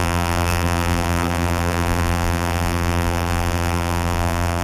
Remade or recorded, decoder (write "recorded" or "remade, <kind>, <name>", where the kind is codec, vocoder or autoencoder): remade, vocoder, BigVGAN v2